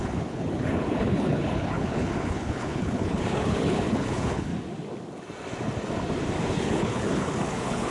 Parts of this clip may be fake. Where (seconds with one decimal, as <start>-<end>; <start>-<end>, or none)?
0.0-4.5; 6.4-7.9